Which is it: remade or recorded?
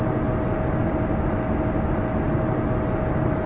recorded